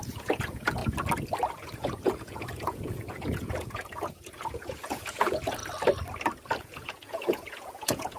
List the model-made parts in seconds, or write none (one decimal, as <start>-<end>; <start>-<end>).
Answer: 0.0-0.8; 1.5-5.6; 6.6-8.2